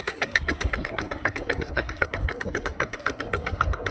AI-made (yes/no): yes